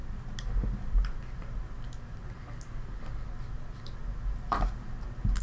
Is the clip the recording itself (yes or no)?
yes